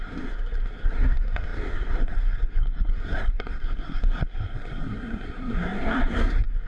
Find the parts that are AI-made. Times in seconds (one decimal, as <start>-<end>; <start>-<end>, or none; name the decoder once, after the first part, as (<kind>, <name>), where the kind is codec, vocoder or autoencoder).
0.0-6.7 (codec, SNAC)